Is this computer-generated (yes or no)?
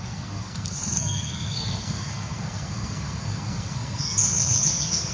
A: yes